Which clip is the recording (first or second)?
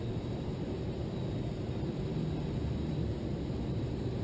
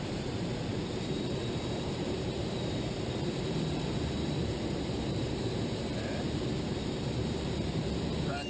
first